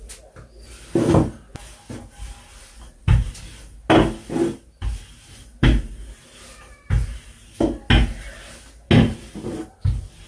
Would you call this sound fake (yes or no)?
no